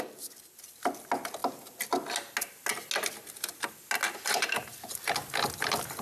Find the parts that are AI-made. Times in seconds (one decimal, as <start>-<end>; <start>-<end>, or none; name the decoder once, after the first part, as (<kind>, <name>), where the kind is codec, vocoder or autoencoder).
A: none